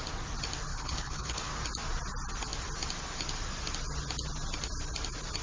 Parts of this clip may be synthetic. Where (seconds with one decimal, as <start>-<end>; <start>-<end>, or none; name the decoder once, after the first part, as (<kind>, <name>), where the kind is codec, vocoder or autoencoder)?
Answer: 0.7-1.5 (codec, HILCodec)